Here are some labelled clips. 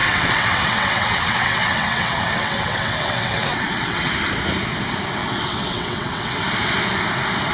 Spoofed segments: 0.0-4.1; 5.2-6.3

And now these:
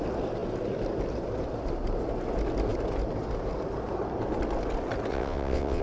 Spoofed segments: 5.1-5.8

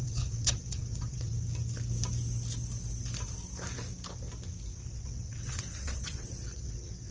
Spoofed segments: 0.0-1.3; 4.9-7.1

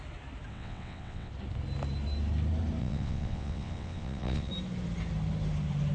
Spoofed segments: 0.5-1.3; 2.8-4.5

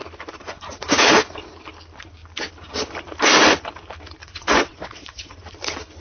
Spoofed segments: 4.2-5.4

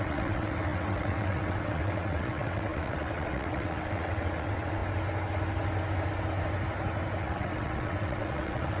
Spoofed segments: 0.0-4.8; 7.2-8.8

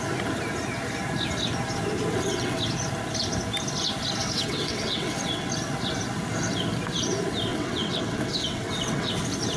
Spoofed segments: 2.1-2.6; 4.2-5.5; 7.5-9.1